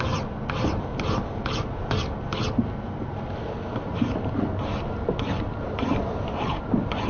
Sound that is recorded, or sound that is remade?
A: recorded